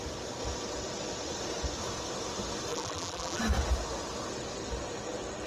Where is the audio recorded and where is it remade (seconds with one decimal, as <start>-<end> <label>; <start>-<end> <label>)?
0.0-2.7 recorded; 2.7-3.4 remade; 3.4-5.5 recorded